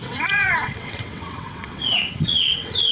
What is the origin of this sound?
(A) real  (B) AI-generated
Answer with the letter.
B